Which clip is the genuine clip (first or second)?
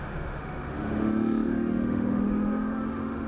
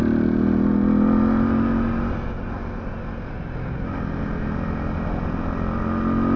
second